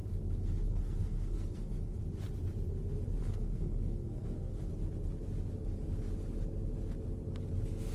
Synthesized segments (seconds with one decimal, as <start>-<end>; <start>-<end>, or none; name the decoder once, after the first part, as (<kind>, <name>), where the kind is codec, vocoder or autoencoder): 0.0-2.0 (codec, SNAC); 3.2-4.7